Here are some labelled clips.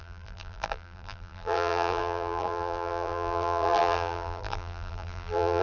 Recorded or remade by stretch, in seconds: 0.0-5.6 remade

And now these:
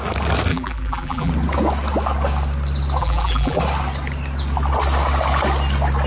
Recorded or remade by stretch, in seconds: 0.0-0.5 recorded; 0.5-1.3 remade; 1.3-3.0 recorded; 3.0-3.6 remade; 3.6-6.1 recorded

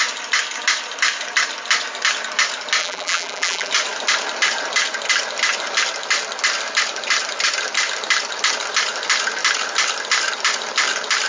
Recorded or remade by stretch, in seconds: 0.0-2.8 recorded; 2.8-3.7 remade; 3.7-11.3 recorded